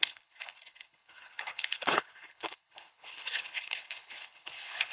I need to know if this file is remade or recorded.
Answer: remade